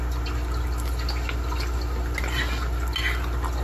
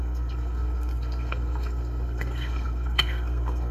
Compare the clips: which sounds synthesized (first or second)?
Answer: second